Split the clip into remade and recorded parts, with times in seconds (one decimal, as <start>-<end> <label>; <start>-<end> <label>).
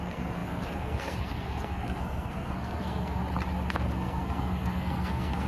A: 0.0-3.2 remade; 3.2-3.7 recorded; 3.7-5.5 remade